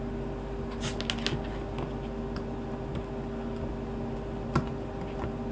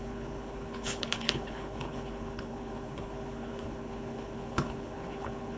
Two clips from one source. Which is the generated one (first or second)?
second